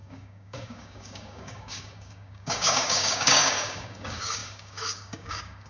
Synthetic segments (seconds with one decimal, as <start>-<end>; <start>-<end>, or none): 0.0-5.7